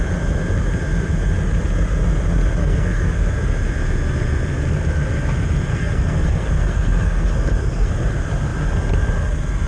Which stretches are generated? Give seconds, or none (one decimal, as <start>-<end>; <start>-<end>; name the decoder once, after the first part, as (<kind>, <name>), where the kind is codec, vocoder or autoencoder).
2.6-3.3 (codec, SNAC); 5.7-7.9